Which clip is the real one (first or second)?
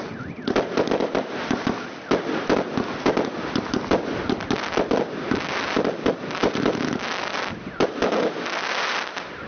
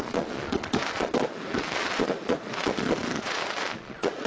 first